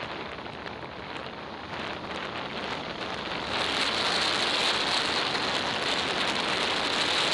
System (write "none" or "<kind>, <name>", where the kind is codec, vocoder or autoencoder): none